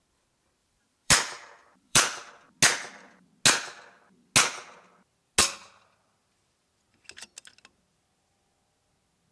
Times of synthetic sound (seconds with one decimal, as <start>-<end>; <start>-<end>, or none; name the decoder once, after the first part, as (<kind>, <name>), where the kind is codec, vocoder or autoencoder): 0.6-2.3 (vocoder, BigVGAN v2)